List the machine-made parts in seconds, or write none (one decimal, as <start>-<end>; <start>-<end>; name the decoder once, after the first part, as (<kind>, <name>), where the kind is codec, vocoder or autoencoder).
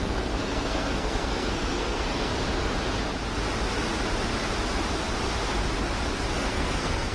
0.0-2.3 (codec, SNAC); 6.3-7.1